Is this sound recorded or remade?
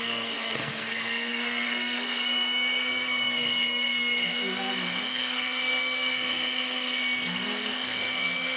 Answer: remade